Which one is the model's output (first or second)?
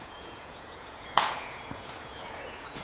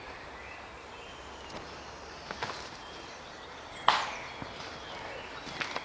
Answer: first